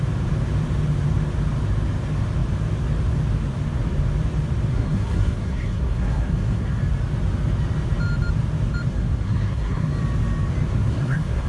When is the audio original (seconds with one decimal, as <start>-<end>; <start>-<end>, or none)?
0.0-4.7; 6.8-8.9; 9.9-10.7